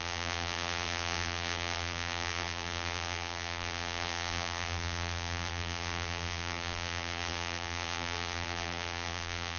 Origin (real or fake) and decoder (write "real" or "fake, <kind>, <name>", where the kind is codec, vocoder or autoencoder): fake, vocoder, BigVGAN v2